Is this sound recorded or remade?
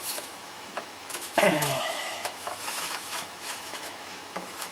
remade